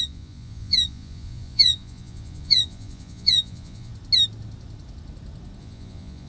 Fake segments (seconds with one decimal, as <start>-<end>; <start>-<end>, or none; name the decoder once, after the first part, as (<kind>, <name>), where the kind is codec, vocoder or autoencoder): 0.0-3.9 (vocoder, Vocos); 5.6-6.3